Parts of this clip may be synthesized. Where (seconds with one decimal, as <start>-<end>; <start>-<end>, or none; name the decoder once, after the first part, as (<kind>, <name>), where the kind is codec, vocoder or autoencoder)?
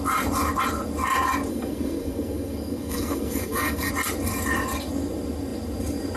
1.5-3.9 (codec, SNAC)